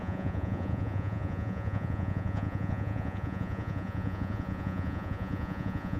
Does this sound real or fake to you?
fake